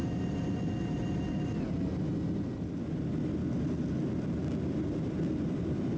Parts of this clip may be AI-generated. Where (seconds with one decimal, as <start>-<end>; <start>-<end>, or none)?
none